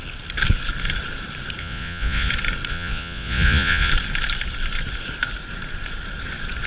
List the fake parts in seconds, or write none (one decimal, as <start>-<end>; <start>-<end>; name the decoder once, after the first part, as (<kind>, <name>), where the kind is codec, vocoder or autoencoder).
1.6-2.3 (vocoder, Vocos); 2.7-3.9